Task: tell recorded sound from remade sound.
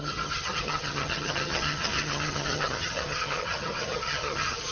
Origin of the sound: remade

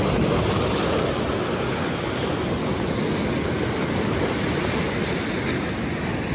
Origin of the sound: recorded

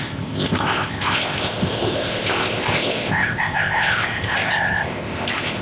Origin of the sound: remade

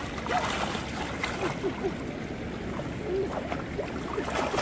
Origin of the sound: recorded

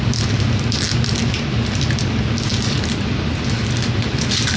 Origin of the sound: recorded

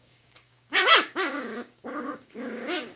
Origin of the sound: remade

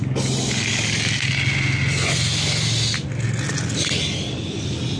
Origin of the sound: recorded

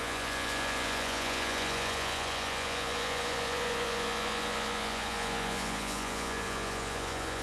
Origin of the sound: remade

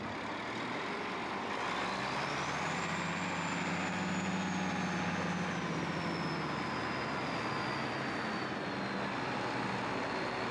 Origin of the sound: recorded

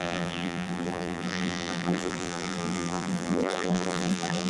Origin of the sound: remade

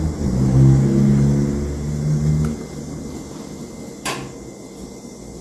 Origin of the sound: recorded